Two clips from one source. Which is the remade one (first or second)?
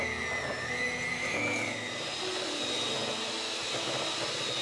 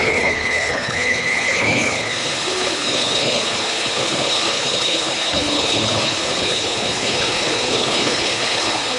second